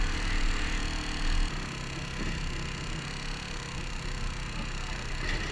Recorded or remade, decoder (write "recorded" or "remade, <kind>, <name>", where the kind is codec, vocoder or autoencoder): recorded